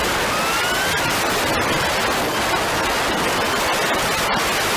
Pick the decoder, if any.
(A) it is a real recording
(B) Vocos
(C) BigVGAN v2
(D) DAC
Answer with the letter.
A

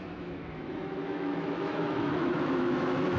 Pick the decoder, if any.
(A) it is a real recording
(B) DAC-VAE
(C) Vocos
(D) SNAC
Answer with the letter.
B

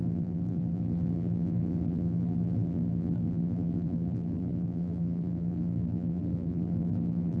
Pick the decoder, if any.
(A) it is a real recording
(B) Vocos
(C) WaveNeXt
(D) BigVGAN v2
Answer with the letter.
D